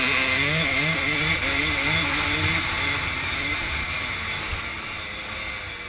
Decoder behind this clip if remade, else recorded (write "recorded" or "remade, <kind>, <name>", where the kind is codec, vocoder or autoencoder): recorded